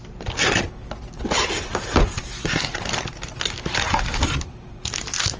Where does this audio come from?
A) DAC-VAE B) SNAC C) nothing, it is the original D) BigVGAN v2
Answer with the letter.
C